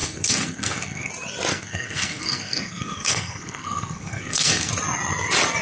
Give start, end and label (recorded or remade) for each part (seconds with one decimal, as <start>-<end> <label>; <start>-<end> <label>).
0.0-1.1 remade; 1.1-1.5 recorded; 1.5-4.7 remade; 4.7-5.6 recorded